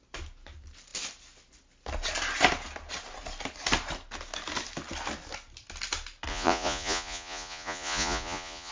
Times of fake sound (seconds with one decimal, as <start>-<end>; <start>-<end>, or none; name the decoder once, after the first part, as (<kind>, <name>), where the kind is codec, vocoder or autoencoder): 6.3-8.7 (vocoder, Vocos)